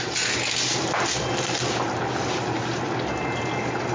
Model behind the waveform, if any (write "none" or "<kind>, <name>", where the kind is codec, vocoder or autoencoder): none